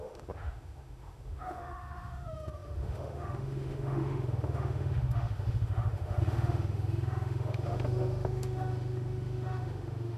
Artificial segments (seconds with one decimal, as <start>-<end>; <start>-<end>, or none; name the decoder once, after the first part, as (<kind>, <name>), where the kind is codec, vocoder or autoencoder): 0.0-10.2 (autoencoder, DAC-VAE)